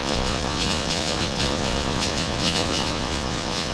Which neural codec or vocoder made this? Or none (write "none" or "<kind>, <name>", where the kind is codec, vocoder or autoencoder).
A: vocoder, Vocos